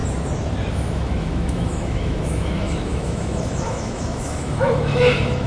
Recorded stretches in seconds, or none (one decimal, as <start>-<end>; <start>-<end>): 0.0-0.7